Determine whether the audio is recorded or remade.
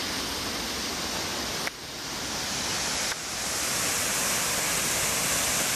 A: recorded